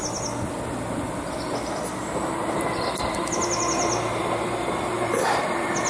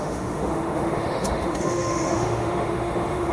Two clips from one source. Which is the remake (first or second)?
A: second